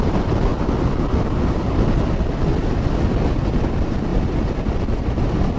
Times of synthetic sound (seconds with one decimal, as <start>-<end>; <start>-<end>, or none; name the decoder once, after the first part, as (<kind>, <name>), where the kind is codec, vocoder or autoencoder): 0.0-5.6 (vocoder, BigVGAN v2)